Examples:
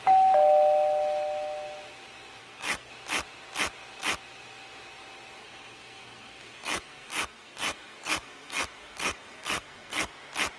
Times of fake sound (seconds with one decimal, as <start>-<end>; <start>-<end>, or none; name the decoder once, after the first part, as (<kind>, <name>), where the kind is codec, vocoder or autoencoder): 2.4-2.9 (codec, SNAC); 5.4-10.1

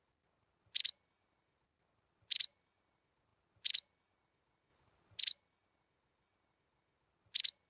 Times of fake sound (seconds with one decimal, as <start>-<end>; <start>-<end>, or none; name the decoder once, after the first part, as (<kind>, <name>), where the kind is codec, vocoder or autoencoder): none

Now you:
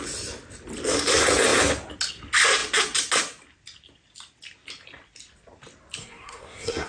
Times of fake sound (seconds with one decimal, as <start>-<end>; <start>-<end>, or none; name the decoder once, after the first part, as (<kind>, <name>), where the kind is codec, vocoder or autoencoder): 6.0-6.9 (codec, SNAC)